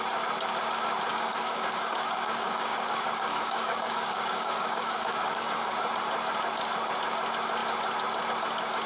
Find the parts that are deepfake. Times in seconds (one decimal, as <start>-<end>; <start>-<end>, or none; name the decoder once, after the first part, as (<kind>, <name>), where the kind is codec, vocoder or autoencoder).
1.1-5.7 (codec, DAC)